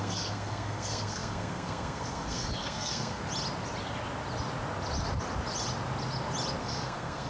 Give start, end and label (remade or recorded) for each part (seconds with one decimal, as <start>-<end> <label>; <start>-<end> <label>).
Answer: 0.0-3.2 remade; 3.2-6.6 recorded; 6.6-7.3 remade